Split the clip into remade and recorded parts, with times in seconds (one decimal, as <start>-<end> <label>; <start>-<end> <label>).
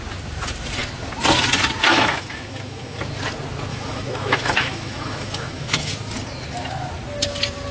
0.0-1.9 recorded; 1.9-3.0 remade; 3.0-3.7 recorded; 3.7-5.9 remade; 5.9-7.7 recorded